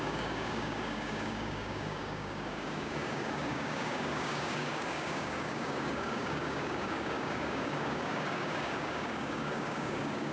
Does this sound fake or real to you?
fake